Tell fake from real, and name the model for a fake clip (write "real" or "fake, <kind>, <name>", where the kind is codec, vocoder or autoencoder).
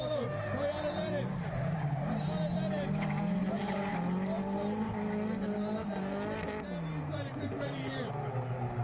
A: real